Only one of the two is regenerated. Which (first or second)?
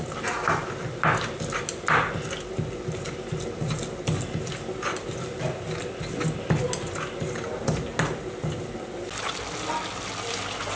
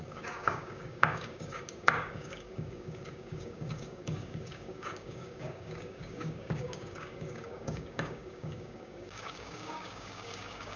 second